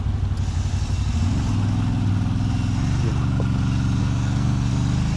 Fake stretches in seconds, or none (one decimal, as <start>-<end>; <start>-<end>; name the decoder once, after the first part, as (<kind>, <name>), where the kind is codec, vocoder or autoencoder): 4.0-4.7 (codec, SNAC)

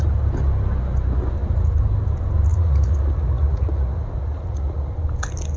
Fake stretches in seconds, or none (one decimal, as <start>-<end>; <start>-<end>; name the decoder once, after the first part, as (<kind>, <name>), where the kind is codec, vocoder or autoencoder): 2.5-4.9 (vocoder, Vocos)